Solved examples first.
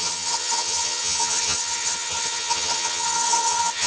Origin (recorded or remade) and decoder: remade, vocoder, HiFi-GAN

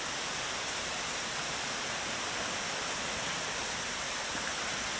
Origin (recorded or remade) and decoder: recorded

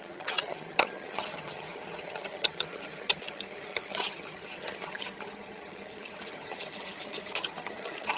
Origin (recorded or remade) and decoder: remade, vocoder, HiFi-GAN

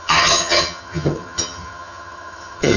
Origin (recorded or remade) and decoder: remade, vocoder, HiFi-GAN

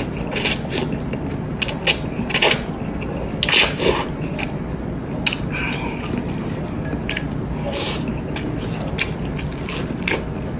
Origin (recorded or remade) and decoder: recorded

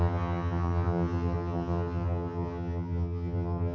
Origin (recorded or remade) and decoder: remade, vocoder, HiFi-GAN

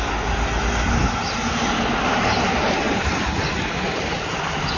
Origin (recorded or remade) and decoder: recorded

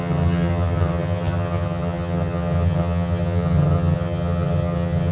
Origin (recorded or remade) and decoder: remade, vocoder, HiFi-GAN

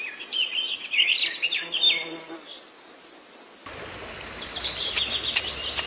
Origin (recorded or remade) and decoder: recorded